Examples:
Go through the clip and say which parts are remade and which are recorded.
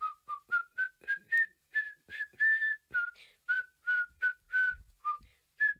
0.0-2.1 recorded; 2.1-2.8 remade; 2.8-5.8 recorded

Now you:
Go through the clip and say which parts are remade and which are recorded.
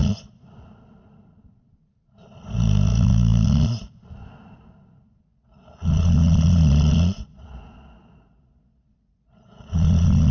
0.0-5.3 recorded; 5.3-10.3 remade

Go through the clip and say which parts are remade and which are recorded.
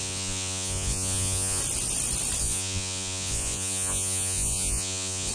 0.0-1.6 remade; 1.6-2.4 recorded; 2.4-5.3 remade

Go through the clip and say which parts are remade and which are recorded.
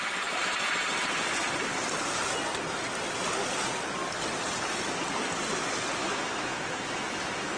0.0-6.0 recorded; 6.0-7.6 remade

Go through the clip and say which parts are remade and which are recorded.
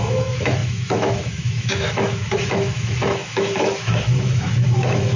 0.0-5.2 remade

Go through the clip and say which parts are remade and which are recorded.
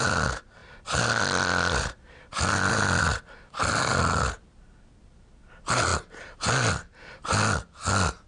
0.0-8.3 recorded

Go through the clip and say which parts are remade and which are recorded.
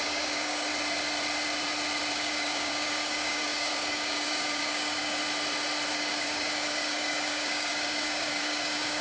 0.0-0.7 remade; 0.7-2.1 recorded; 2.1-5.2 remade; 5.2-5.9 recorded; 5.9-9.0 remade